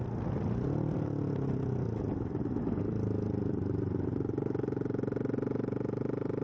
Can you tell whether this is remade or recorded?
recorded